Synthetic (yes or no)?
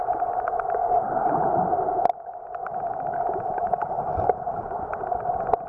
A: no